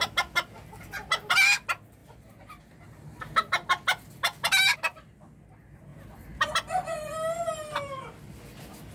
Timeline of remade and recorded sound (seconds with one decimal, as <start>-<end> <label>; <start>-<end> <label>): 0.0-2.0 recorded; 2.0-2.6 remade; 2.6-5.9 recorded; 5.9-6.5 remade; 6.5-8.9 recorded